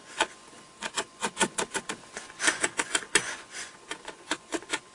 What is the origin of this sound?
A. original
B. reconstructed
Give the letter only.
B